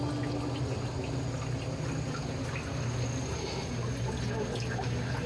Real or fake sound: real